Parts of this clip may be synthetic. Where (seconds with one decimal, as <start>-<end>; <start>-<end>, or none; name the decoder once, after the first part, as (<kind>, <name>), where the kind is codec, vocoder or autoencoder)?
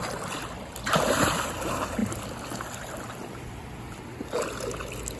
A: none